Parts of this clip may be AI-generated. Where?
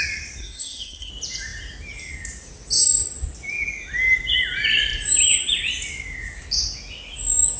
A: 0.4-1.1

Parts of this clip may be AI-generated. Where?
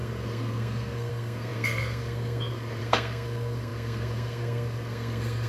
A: 0.0-5.5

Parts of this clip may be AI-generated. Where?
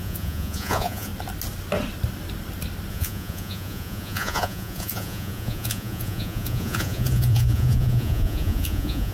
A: 0.0-1.1; 2.9-9.1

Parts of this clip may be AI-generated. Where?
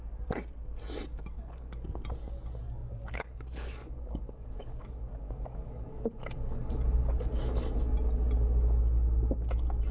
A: 1.1-1.8; 2.8-7.8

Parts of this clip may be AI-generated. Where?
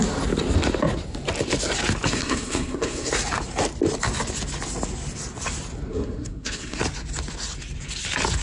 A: 2.1-3.1; 5.9-6.8